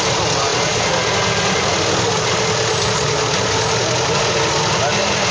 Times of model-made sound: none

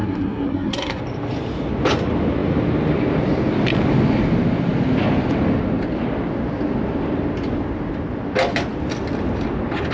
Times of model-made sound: 0.0-1.0